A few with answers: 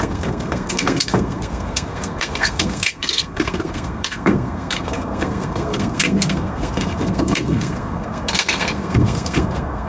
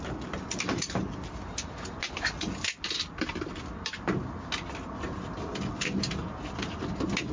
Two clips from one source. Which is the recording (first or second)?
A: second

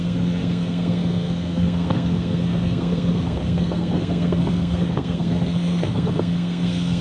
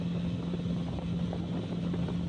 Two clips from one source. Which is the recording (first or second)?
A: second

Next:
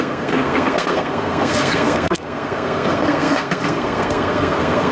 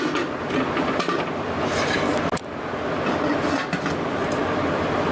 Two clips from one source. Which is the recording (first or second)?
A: second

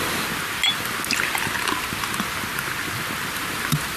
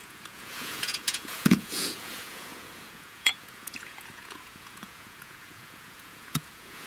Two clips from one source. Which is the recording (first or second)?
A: first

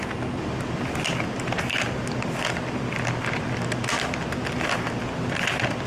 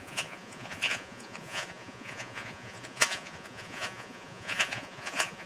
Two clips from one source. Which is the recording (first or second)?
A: first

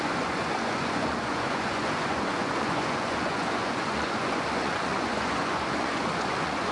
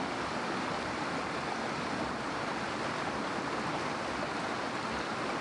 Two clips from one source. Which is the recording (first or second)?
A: second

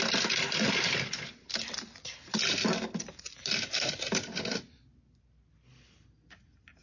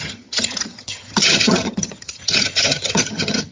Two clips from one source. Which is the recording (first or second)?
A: first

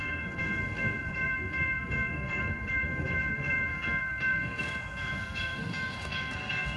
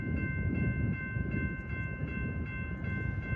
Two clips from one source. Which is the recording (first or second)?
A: second